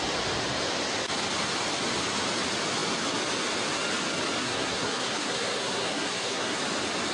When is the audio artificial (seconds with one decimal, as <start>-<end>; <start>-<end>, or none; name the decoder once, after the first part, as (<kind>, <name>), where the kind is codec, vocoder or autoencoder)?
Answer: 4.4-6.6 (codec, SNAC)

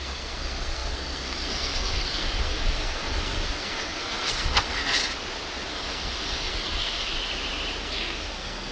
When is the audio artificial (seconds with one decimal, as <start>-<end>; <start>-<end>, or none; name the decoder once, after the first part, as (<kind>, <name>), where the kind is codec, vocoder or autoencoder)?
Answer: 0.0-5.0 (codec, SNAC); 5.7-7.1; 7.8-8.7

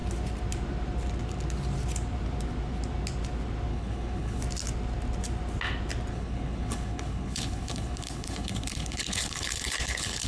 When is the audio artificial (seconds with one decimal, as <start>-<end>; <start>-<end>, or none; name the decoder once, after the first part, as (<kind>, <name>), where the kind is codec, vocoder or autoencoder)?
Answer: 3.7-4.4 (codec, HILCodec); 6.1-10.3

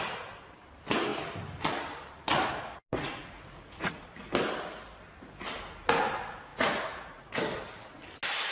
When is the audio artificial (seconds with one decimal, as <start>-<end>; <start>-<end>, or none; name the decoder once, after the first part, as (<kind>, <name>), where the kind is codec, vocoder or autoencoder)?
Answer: 2.9-4.1 (vocoder, Vocos); 6.5-7.3